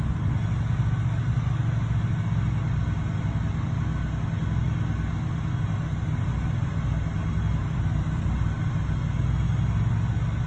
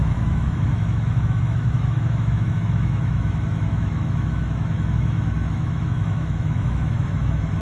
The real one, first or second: first